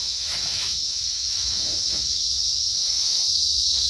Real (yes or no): no